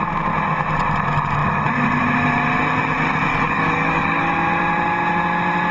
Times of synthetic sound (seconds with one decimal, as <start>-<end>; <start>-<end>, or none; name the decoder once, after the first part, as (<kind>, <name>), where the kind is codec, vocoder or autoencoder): 3.3-4.2 (codec, DAC)